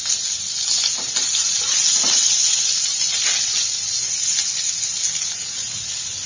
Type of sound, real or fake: real